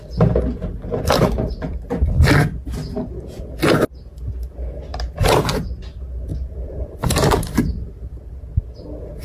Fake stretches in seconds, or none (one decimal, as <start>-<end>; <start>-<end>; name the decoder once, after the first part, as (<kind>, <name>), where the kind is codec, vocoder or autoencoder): 4.9-5.7 (vocoder, BigVGAN v2); 6.3-8.2